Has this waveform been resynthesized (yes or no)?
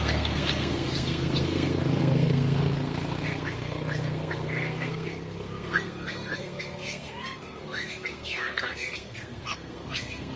yes